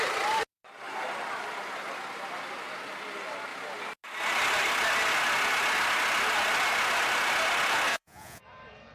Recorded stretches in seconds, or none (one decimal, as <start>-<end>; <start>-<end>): 0.0-7.9; 8.4-8.9